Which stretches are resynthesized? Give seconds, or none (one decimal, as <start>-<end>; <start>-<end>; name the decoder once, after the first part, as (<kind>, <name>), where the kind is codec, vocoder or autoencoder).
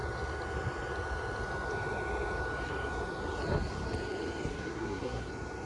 4.5-5.3 (codec, SNAC)